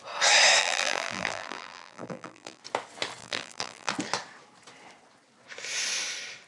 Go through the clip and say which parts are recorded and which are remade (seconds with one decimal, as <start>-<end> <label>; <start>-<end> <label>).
0.0-0.6 recorded; 0.6-2.6 remade; 2.6-3.2 recorded; 3.2-3.9 remade; 3.9-6.5 recorded